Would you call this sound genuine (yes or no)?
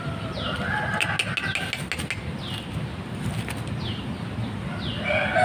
yes